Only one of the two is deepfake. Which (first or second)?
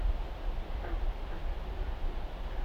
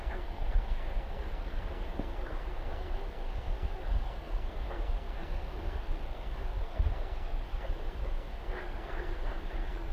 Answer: second